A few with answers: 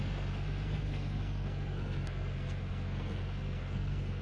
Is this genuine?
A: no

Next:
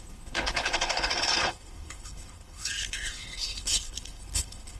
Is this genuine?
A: no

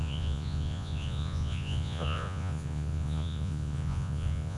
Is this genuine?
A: no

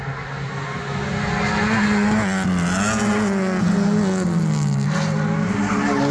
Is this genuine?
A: yes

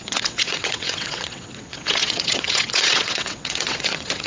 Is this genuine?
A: no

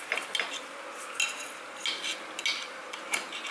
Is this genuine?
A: yes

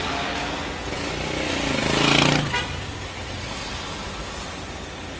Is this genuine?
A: yes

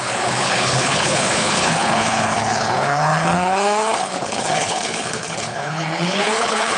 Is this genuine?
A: no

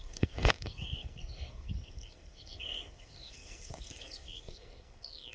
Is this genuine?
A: no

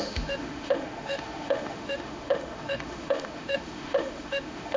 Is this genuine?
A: no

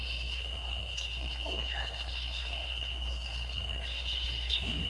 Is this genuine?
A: no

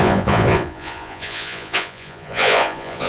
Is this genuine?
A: no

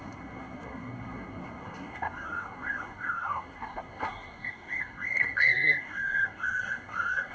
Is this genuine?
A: no